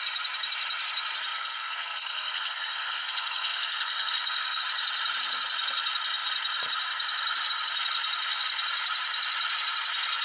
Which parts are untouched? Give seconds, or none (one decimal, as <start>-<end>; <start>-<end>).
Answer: 0.0-1.3; 4.6-10.2